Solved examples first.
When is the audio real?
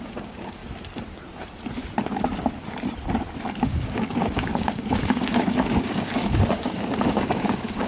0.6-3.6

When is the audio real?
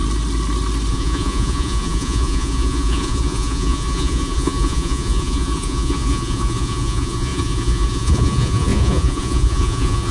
0.0-0.9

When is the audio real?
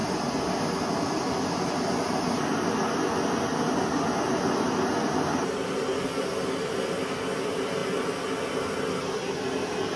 0.0-10.0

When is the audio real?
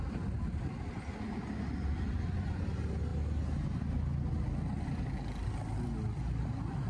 0.0-6.9